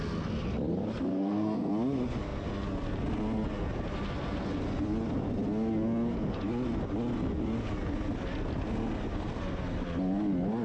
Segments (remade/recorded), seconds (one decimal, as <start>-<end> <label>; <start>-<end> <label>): 0.0-1.1 recorded; 1.1-1.7 remade; 1.7-10.6 recorded